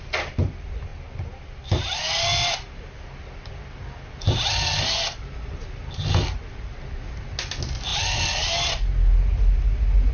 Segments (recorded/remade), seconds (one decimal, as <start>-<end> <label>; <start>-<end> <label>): 0.0-10.1 recorded